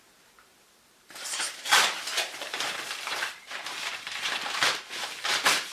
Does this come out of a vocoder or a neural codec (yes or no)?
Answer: yes